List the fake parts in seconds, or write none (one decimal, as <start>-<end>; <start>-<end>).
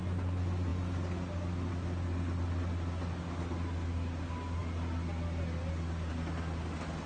none